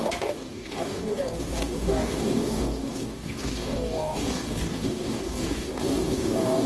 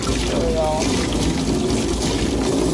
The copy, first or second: first